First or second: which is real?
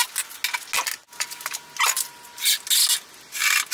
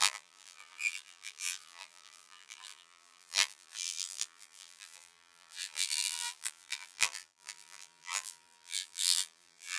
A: first